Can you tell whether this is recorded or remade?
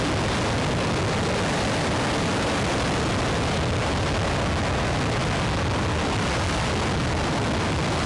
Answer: recorded